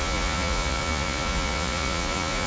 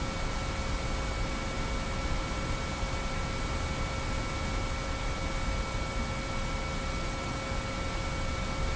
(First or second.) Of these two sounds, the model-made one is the first